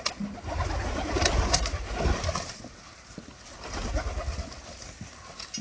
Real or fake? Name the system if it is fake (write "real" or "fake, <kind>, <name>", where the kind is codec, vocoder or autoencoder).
real